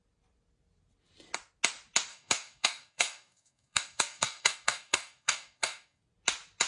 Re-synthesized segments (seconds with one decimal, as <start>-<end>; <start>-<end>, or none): 2.1-6.0